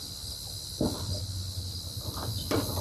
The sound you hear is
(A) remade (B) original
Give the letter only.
B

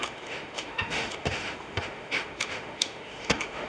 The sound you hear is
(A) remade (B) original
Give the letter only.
A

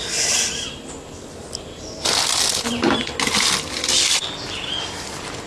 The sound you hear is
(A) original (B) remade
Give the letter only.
A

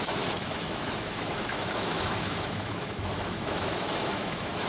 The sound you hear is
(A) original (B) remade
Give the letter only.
B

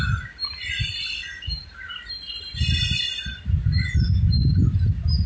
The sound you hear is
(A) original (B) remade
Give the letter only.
A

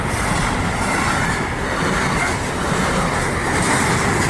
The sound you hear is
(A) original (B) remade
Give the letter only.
A